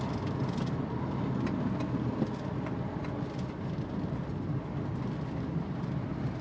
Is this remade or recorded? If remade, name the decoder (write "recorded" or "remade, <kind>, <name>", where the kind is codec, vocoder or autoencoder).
recorded